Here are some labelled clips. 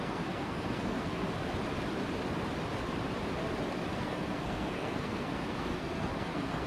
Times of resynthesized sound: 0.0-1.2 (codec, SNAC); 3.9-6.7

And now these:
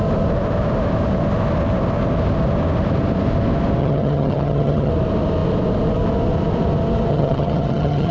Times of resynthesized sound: 3.8-4.9 (vocoder, HiFi-GAN); 7.1-8.1

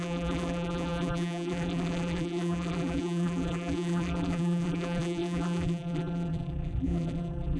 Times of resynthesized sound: 0.0-7.6 (vocoder, BigVGAN v2)

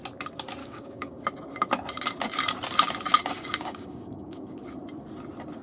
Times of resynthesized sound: 0.6-1.2 (codec, DAC); 3.2-4.6

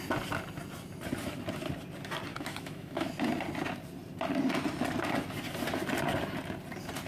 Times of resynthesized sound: 2.3-3.1 (autoencoder, DAC-VAE)

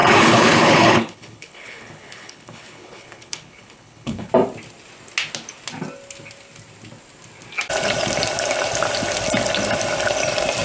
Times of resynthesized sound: 0.0-4.3 (codec, HILCodec)

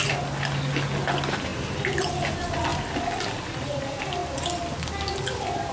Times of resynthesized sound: none